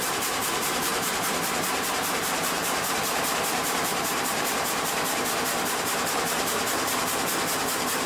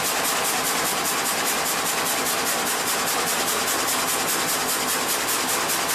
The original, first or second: second